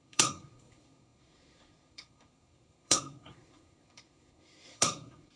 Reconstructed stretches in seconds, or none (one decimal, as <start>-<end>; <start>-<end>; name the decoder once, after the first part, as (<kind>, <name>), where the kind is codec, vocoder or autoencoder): 0.0-5.4 (codec, SNAC)